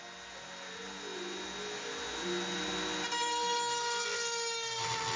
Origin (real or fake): real